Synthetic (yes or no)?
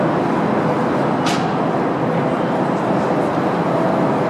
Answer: no